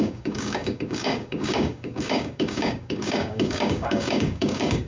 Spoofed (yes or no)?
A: yes